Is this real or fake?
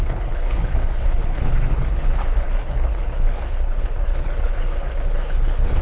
fake